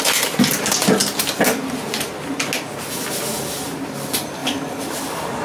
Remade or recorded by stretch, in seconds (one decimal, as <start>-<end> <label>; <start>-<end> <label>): 0.0-4.4 recorded; 4.4-5.0 remade; 5.0-5.4 recorded